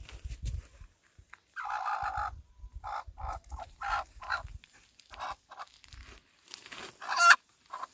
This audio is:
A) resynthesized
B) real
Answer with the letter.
B